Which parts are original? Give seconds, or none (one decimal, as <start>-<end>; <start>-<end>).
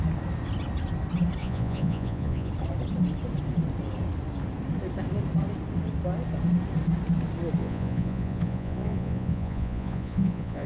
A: 0.0-1.4; 2.5-7.6